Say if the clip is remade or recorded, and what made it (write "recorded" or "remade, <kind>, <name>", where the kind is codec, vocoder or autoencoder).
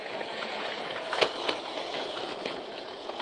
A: remade, vocoder, Vocos